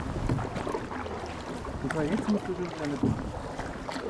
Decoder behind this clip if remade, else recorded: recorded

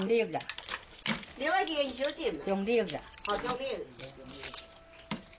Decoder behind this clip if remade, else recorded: recorded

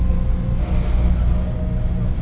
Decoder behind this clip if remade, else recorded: recorded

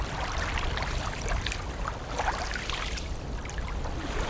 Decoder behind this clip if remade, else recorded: recorded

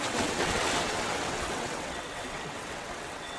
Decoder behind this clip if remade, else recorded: remade, vocoder, WaveNeXt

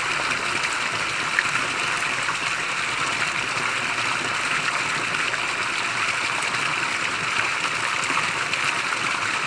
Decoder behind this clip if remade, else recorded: recorded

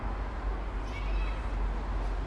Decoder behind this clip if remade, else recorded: recorded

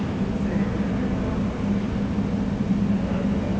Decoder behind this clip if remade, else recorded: recorded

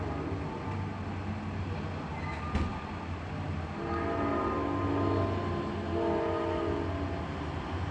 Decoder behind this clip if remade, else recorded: recorded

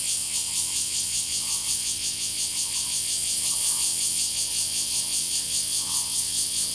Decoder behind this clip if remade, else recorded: remade, vocoder, WaveNeXt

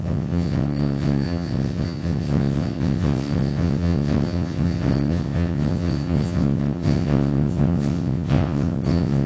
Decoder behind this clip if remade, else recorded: remade, vocoder, WaveNeXt